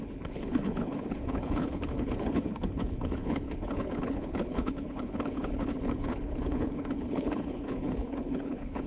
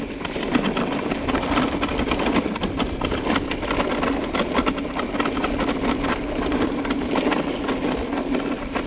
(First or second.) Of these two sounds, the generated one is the first